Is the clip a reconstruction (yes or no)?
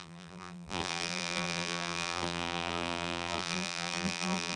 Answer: yes